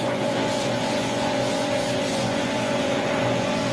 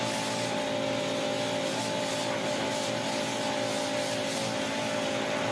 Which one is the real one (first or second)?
second